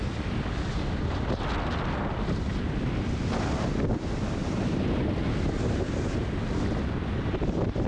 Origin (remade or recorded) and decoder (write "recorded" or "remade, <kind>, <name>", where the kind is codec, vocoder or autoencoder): recorded